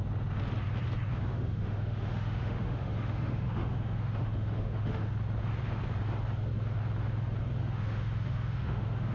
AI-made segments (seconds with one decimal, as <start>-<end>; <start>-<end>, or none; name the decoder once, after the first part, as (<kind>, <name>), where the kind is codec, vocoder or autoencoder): 1.3-5.1 (autoencoder, DAC-VAE); 7.6-9.1